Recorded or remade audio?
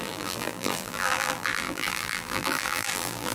remade